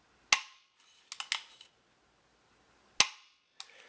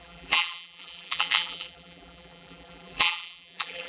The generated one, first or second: second